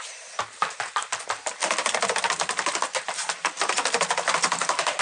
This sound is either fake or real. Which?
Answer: real